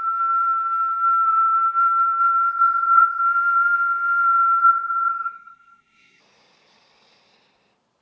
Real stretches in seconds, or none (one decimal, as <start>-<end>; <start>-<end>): 0.0-2.5; 3.2-4.6; 6.2-8.0